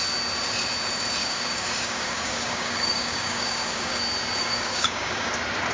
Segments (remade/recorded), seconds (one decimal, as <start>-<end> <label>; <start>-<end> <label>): 0.0-1.2 recorded; 1.2-4.0 remade; 4.0-4.4 recorded; 4.4-5.3 remade; 5.3-5.7 recorded